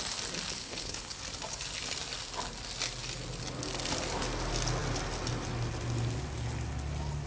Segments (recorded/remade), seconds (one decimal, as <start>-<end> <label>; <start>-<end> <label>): 0.0-0.6 recorded; 0.6-1.2 remade; 1.2-7.3 recorded